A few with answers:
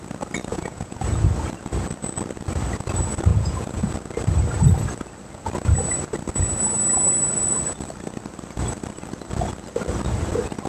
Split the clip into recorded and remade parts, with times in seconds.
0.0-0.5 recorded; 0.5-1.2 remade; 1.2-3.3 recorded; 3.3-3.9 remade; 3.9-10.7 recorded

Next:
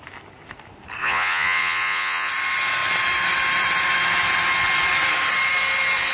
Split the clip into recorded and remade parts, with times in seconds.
0.0-1.0 recorded; 1.0-2.3 remade; 2.3-6.1 recorded